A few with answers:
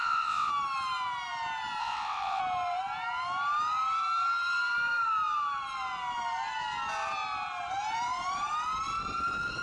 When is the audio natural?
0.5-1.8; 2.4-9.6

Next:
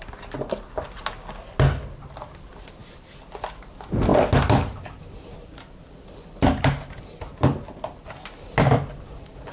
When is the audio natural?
0.0-9.5

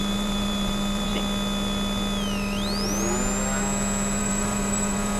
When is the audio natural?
1.1-4.2

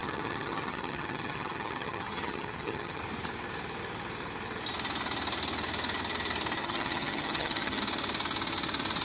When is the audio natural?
3.0-6.6; 7.8-9.0

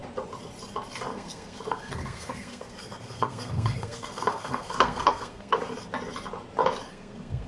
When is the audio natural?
0.0-1.1; 5.6-6.9

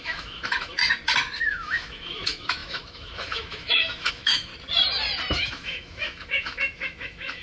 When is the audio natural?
0.8-1.4; 4.5-5.3

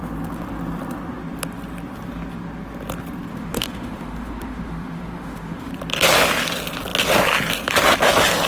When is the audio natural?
0.0-3.3; 5.7-8.5

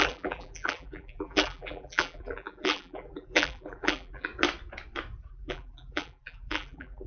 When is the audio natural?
4.3-5.3